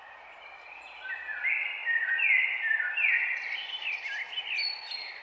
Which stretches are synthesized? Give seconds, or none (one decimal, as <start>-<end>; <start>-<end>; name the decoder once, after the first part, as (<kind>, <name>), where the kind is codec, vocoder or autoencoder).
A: 0.0-5.2 (vocoder, BigVGAN v2)